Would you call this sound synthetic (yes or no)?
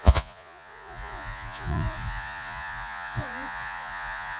yes